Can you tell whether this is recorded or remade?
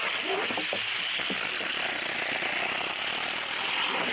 recorded